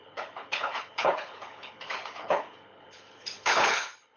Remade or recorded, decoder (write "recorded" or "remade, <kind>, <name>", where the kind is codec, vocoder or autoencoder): remade, codec, HILCodec